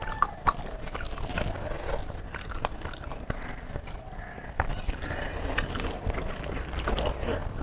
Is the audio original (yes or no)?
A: yes